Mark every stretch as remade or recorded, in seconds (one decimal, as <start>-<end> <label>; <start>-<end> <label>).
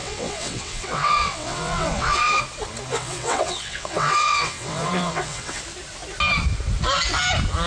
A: 0.0-2.4 remade; 2.4-2.9 recorded; 2.9-5.6 remade; 5.6-7.7 recorded